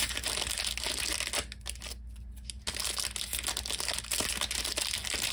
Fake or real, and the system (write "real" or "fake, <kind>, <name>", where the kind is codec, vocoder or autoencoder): real